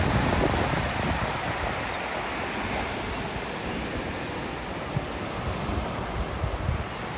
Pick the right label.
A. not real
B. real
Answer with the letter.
B